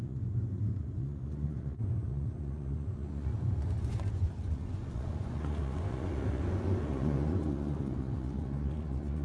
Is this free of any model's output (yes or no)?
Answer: no